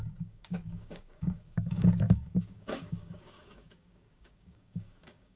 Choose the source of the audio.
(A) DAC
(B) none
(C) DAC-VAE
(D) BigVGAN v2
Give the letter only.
A